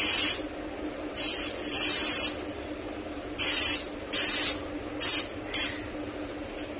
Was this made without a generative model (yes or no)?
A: yes